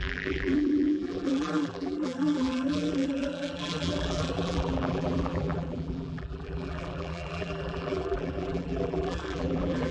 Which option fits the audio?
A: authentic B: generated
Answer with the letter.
B